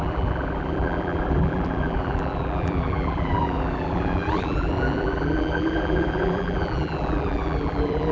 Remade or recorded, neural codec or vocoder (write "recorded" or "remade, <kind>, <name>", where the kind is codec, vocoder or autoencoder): remade, vocoder, BigVGAN v2